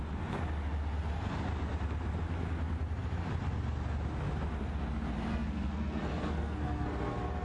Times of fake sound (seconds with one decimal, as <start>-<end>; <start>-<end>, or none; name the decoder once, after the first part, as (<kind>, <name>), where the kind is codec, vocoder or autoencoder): 5.3-6.9 (codec, SNAC)